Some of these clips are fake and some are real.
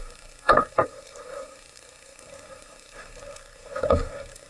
fake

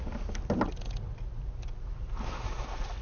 real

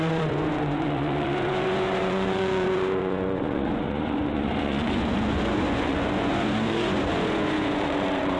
fake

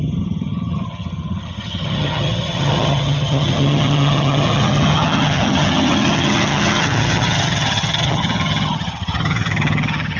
fake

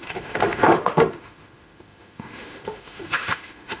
fake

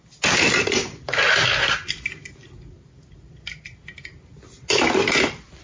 real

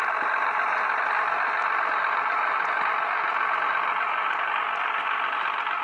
real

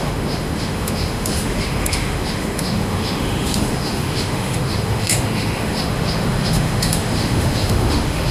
fake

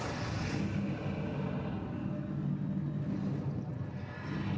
real